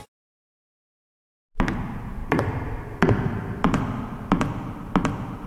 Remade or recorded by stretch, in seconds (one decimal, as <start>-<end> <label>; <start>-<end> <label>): 0.0-5.5 recorded